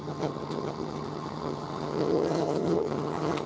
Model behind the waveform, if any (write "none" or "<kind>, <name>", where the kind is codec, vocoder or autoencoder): vocoder, HiFi-GAN